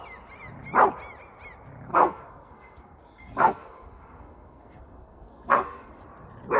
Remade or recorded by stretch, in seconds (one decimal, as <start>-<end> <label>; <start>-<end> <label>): 0.0-1.9 recorded; 1.9-5.9 remade; 5.9-6.6 recorded